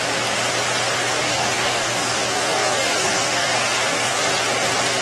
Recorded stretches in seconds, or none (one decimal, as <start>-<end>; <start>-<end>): 0.0-1.2; 4.2-5.0